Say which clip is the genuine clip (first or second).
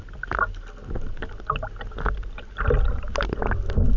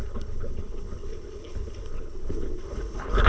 first